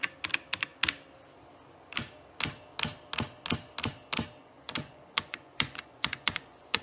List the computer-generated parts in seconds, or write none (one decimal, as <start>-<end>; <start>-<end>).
4.4-6.8